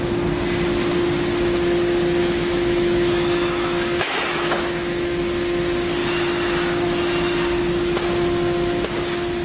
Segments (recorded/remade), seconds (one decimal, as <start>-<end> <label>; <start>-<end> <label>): 0.0-2.2 recorded; 2.2-5.2 remade; 5.2-9.4 recorded